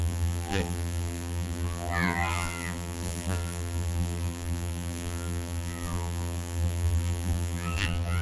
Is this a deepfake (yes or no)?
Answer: yes